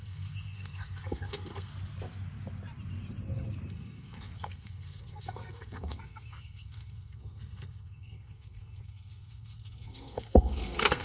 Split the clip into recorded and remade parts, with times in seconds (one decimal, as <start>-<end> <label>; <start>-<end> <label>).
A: 0.0-1.7 remade; 1.7-3.7 recorded; 3.7-11.0 remade